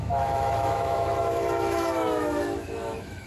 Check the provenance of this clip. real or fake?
fake